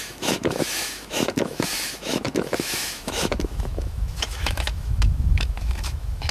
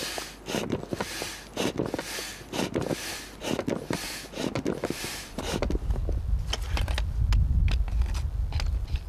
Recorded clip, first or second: second